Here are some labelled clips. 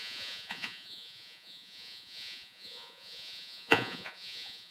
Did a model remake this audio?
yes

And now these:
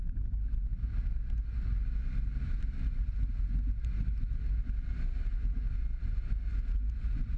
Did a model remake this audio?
no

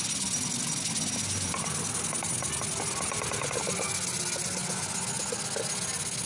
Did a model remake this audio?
no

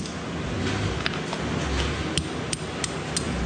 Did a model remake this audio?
no